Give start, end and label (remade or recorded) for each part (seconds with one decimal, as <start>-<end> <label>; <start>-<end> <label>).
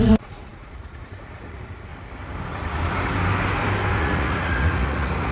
0.0-1.9 remade; 1.9-4.0 recorded; 4.0-5.3 remade